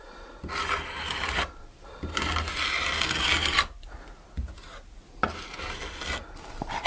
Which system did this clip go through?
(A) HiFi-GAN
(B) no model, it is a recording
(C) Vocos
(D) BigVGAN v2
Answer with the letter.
B